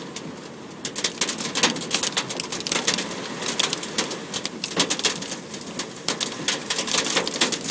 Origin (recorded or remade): recorded